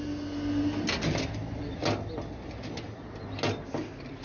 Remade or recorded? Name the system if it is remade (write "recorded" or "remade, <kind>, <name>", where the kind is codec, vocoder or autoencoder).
recorded